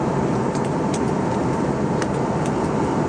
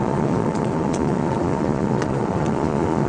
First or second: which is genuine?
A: first